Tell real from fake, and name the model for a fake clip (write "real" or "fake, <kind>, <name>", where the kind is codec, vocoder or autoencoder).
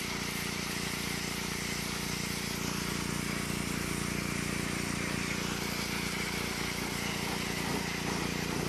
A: real